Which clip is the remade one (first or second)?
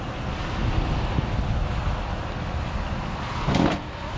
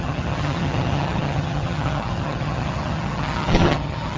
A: second